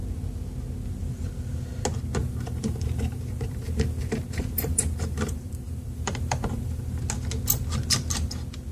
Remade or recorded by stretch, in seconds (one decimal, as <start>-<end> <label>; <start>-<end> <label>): 0.0-2.2 recorded; 2.2-7.0 remade; 7.0-8.7 recorded